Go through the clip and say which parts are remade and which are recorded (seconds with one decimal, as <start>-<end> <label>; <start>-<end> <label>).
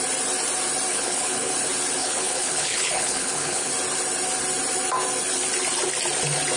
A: 0.0-0.9 recorded; 0.9-1.5 remade; 1.5-2.0 recorded; 2.0-3.7 remade; 3.7-6.6 recorded